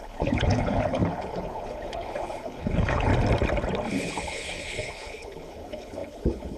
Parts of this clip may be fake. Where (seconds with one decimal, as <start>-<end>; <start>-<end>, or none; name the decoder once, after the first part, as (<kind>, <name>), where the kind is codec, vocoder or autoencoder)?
0.0-3.1 (codec, HILCodec); 3.9-6.6